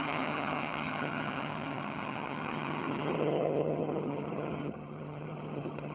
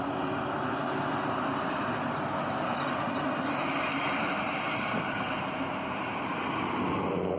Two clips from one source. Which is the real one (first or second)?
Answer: second